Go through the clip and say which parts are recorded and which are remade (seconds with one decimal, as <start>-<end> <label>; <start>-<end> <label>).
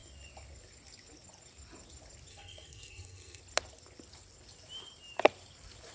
0.0-2.3 recorded; 2.3-3.4 remade; 3.4-5.9 recorded